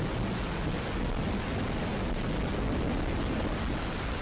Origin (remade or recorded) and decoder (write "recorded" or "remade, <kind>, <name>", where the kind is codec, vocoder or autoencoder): recorded